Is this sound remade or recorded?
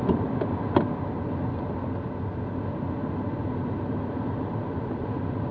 recorded